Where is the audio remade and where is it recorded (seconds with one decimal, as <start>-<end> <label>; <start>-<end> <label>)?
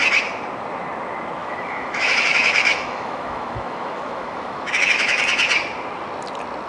0.0-1.4 recorded; 1.4-5.2 remade; 5.2-6.7 recorded